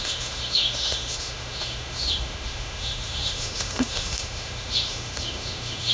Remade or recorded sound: remade